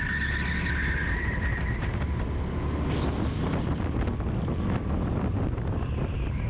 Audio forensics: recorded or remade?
recorded